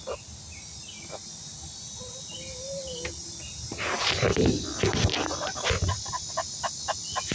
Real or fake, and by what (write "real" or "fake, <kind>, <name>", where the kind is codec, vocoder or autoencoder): real